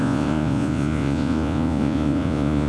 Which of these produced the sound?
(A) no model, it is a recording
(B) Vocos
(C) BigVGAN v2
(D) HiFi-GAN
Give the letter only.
B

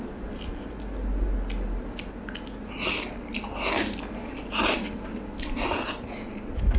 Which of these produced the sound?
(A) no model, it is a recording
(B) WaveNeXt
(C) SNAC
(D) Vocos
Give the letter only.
A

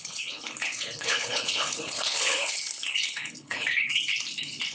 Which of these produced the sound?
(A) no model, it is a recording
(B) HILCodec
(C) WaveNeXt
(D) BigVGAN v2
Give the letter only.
B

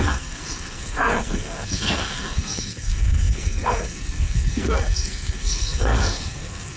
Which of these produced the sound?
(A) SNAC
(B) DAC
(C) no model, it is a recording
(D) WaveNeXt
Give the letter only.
A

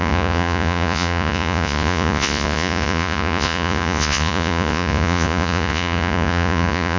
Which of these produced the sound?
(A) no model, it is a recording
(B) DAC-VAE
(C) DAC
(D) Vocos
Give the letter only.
D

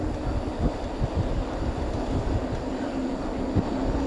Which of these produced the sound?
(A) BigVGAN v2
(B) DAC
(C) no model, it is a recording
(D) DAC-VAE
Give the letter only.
C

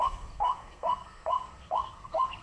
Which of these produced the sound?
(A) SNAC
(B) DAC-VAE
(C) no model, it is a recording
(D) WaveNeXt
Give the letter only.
A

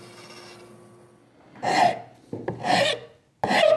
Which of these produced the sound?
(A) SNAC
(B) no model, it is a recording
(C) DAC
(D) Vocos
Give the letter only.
B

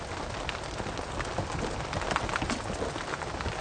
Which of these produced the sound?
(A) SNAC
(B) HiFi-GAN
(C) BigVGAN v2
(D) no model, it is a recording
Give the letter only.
D